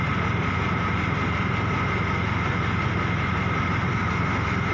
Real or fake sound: real